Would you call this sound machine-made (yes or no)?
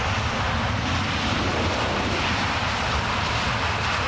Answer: no